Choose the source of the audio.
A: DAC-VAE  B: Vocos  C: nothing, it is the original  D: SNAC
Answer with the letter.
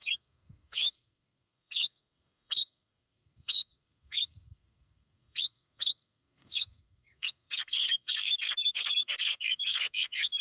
D